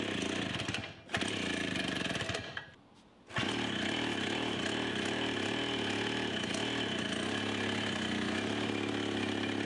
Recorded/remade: recorded